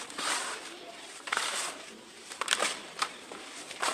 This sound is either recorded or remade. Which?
remade